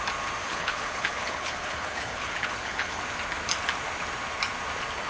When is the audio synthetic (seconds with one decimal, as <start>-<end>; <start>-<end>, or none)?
0.4-3.0